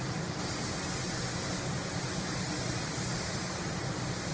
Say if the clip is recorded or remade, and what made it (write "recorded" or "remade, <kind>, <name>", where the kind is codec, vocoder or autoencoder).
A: recorded